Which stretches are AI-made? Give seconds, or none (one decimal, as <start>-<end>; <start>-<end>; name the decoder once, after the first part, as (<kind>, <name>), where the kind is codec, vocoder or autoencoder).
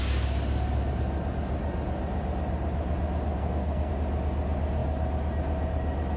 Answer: 3.4-3.9 (codec, SNAC)